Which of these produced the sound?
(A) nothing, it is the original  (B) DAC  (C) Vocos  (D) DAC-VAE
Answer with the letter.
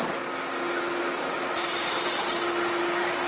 A